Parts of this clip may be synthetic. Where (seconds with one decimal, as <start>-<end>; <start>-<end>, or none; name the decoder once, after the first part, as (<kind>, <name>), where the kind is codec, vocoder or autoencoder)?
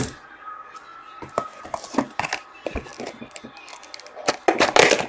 none